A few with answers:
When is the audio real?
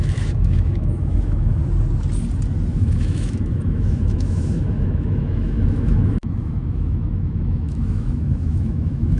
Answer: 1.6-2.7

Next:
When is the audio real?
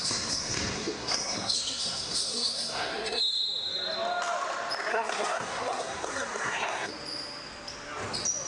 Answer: 3.2-4.9; 6.9-8.5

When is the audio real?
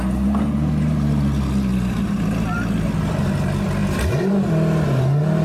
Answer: 0.0-5.4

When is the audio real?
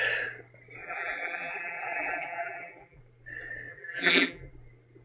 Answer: 0.0-0.8; 3.0-3.7; 4.5-5.0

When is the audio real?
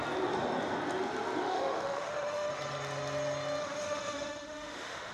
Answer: 0.0-1.4; 2.5-3.6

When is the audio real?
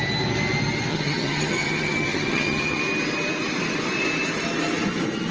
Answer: 0.0-0.9; 2.8-5.3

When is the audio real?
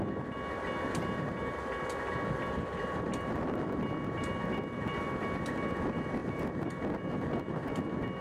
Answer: 0.0-8.2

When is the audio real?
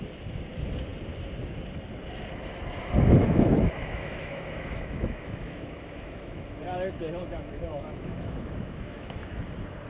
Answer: 0.0-3.2; 6.6-7.0; 9.4-9.9